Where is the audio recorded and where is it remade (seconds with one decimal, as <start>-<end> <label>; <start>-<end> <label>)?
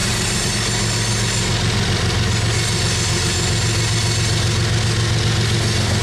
0.0-0.5 remade; 0.5-6.0 recorded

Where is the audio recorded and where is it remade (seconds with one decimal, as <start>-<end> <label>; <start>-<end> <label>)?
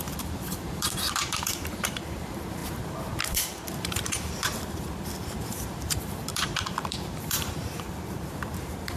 0.0-9.0 remade